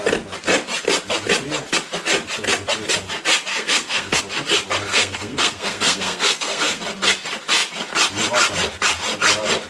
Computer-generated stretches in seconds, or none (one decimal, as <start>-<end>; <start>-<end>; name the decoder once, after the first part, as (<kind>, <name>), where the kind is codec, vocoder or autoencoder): 3.5-4.2 (codec, SNAC); 4.9-6.8